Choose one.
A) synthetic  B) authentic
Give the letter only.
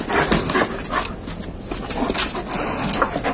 B